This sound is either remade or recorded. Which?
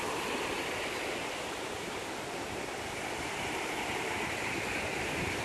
recorded